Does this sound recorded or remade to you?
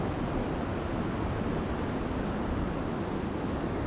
recorded